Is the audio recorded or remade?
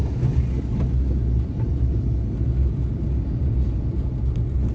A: recorded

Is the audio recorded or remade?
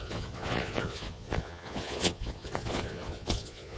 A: remade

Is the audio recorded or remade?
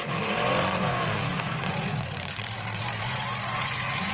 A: remade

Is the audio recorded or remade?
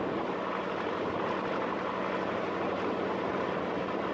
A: recorded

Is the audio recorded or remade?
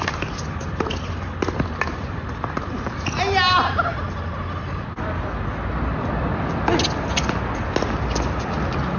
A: recorded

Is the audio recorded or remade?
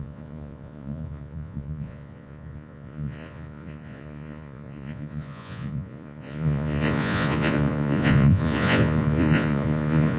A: remade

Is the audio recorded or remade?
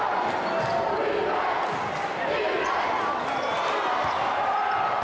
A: recorded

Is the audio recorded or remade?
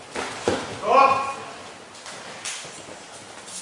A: recorded